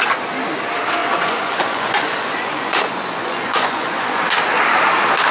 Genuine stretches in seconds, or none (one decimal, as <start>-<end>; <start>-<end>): 0.0-1.0; 4.2-5.3